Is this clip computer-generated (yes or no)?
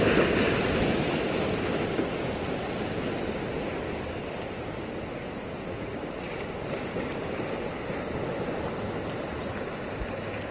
no